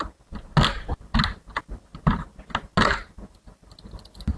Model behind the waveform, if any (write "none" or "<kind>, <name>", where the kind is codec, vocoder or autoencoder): none